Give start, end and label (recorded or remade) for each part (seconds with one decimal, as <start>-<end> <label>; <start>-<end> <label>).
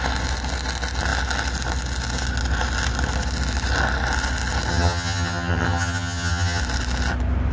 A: 0.0-4.7 recorded; 4.7-6.6 remade; 6.6-7.5 recorded